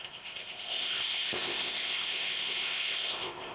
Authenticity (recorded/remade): remade